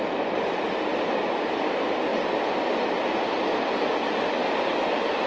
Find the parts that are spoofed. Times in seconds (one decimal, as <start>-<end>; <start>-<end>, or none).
0.9-1.4